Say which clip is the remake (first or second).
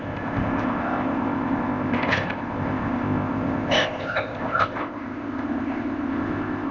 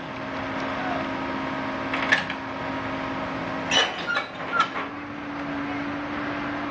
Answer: first